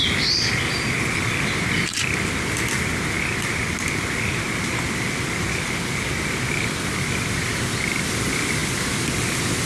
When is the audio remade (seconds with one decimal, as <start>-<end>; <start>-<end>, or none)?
none